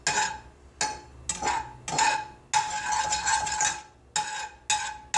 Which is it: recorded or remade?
recorded